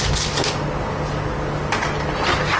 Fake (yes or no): no